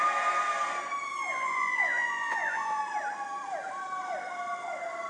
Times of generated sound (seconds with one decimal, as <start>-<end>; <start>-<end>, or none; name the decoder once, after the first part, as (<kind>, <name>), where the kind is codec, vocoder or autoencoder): 1.3-2.8 (vocoder, Vocos)